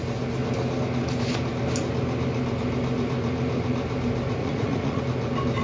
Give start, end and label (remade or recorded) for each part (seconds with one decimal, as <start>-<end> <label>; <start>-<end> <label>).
0.0-4.4 recorded; 4.4-5.0 remade; 5.0-5.6 recorded